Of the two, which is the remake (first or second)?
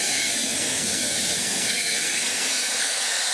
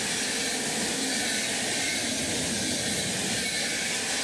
first